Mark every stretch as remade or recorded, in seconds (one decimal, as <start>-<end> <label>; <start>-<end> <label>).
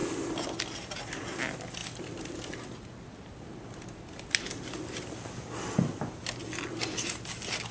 0.0-1.8 recorded; 1.8-4.3 remade; 4.3-7.7 recorded